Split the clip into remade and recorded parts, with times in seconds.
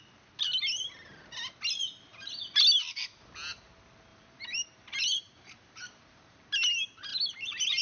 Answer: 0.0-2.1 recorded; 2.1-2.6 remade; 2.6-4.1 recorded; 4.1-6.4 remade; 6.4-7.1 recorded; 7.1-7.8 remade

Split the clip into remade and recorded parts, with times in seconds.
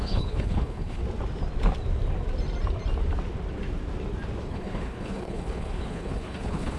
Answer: 0.0-1.0 remade; 1.0-4.4 recorded; 4.4-6.8 remade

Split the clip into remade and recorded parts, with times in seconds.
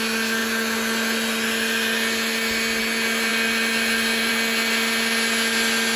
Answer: 0.0-6.0 recorded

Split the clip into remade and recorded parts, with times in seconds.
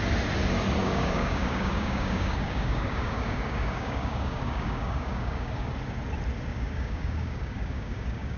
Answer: 0.0-0.8 recorded; 0.8-5.7 remade; 5.7-6.5 recorded; 6.5-8.4 remade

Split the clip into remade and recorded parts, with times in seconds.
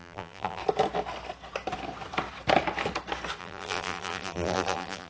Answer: 0.0-0.6 remade; 0.6-3.4 recorded; 3.4-5.1 remade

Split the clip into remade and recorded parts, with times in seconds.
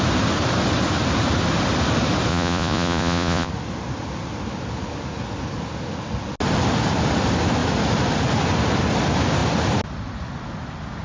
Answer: 0.0-2.3 recorded; 2.3-3.5 remade; 3.5-11.0 recorded